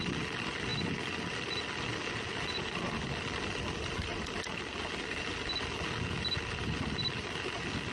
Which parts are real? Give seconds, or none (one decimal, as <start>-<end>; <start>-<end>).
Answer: 0.0-7.9